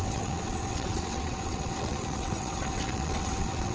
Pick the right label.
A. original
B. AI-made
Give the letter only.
B